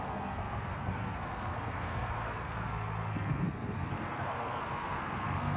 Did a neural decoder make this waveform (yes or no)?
yes